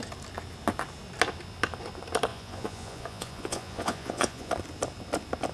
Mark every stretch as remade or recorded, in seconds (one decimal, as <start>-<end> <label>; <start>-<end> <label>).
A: 0.0-2.3 recorded; 2.3-4.5 remade; 4.5-5.5 recorded